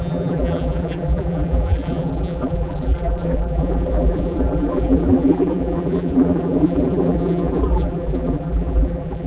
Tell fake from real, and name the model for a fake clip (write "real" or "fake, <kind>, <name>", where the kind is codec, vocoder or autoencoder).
fake, vocoder, BigVGAN v2